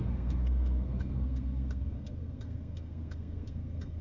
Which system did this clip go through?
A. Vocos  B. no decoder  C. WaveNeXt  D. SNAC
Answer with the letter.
D